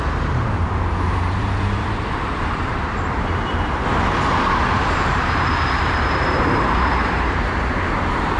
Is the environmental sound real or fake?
fake